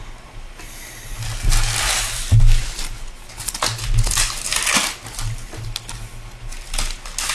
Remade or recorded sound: recorded